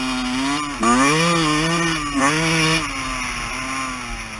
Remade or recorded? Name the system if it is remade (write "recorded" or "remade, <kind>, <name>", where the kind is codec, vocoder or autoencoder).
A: recorded